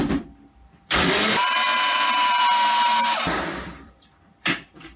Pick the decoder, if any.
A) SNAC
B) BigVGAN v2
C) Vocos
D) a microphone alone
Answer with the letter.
B